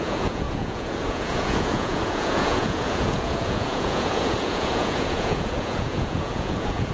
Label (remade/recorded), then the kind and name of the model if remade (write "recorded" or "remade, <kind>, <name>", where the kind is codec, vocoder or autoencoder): remade, vocoder, Vocos